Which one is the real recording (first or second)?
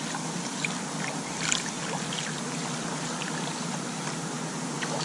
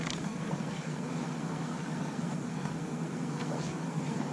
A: first